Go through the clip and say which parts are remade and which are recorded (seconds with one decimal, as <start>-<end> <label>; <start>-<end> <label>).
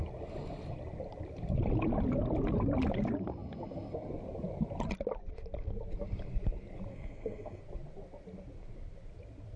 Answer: 0.0-6.9 recorded; 6.9-7.6 remade; 7.6-9.6 recorded